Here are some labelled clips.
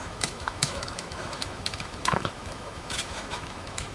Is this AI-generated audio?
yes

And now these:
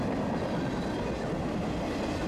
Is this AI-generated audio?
no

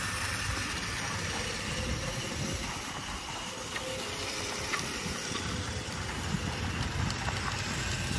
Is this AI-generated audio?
no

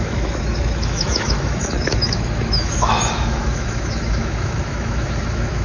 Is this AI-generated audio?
yes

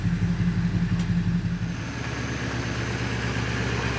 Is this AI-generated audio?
no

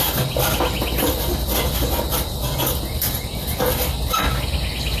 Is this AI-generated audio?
no